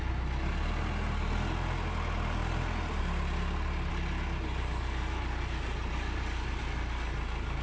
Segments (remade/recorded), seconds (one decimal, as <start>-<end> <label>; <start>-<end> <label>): 0.0-7.6 recorded